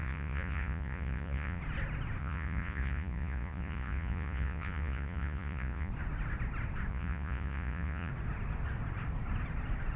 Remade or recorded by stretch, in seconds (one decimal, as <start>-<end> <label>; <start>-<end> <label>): 0.0-1.6 remade; 1.6-2.2 recorded; 2.2-5.9 remade; 5.9-6.9 recorded; 6.9-8.1 remade; 8.1-10.0 recorded